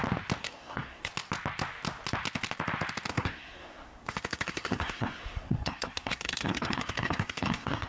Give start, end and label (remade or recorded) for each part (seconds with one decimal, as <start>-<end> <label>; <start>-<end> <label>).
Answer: 0.0-0.4 recorded; 0.4-1.1 remade; 1.1-3.1 recorded; 3.1-7.9 remade